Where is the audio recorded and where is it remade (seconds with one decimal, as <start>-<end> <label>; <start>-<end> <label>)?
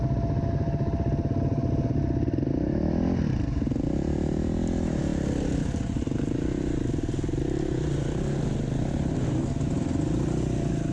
0.0-10.9 recorded